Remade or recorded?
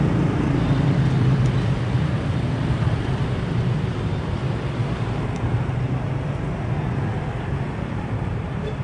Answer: remade